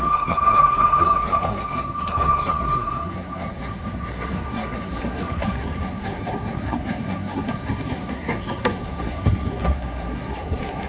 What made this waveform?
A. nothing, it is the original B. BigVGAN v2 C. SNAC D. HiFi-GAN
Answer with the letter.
C